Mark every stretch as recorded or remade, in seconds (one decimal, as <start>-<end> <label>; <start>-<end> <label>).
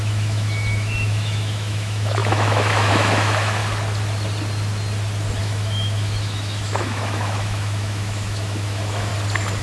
0.0-3.6 remade; 3.6-5.4 recorded; 5.4-9.1 remade; 9.1-9.6 recorded